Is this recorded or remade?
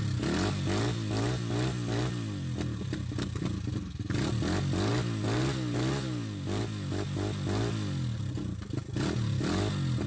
recorded